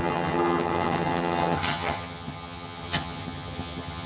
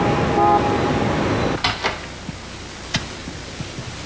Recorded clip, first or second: second